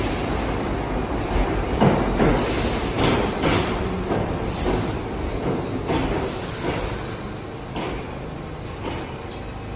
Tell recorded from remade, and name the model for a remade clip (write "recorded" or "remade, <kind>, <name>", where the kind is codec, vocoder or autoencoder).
recorded